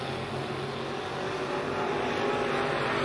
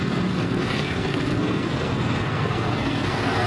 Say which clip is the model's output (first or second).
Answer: second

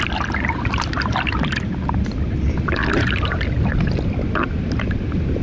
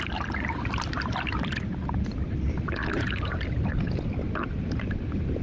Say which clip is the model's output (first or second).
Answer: second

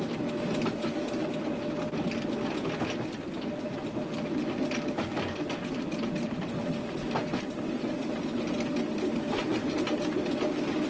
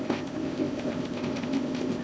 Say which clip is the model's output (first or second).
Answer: second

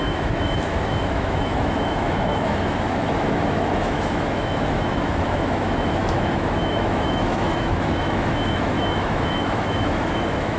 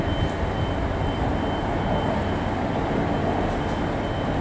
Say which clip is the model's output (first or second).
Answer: first